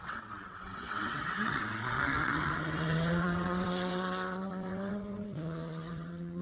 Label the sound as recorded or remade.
remade